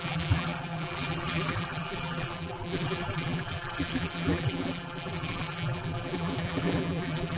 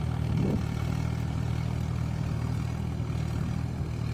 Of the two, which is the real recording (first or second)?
second